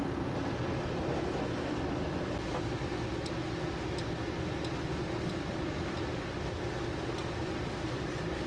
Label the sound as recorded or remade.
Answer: recorded